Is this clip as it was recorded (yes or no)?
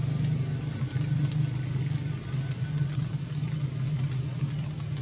yes